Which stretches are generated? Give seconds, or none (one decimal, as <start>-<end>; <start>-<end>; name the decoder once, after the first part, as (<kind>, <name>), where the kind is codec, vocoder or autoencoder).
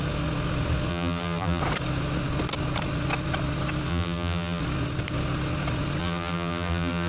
0.9-1.6 (vocoder, BigVGAN v2); 3.9-4.6; 6.0-7.1